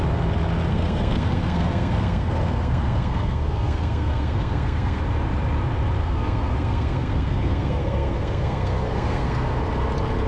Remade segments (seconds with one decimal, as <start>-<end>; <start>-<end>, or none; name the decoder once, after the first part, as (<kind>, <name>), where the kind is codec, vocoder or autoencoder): 0.7-5.0 (codec, SNAC); 6.0-9.6